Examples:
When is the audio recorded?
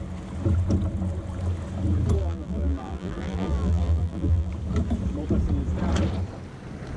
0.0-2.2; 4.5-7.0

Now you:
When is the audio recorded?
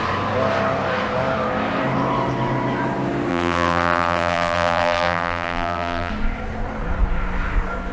0.0-3.3; 6.1-7.9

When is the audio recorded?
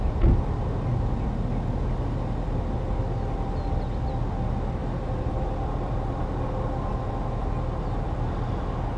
0.0-4.8; 5.9-9.0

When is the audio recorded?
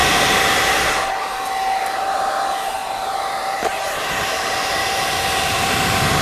0.9-2.8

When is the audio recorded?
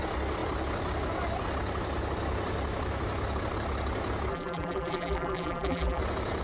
0.0-4.3; 6.0-6.4